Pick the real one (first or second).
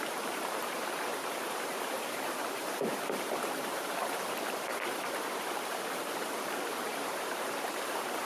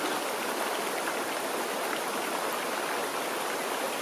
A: second